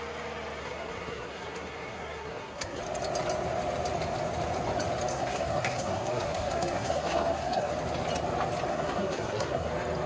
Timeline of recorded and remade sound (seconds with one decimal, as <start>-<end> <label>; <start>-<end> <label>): 0.0-0.6 recorded; 0.6-2.8 remade; 2.8-5.1 recorded; 5.1-7.7 remade; 7.7-8.7 recorded; 8.7-9.7 remade; 9.7-10.1 recorded